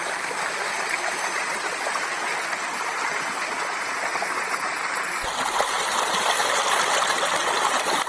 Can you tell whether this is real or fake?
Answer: real